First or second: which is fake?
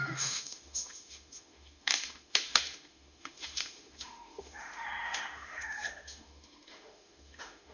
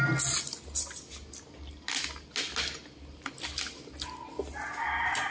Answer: first